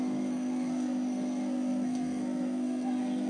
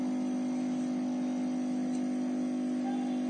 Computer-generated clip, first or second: first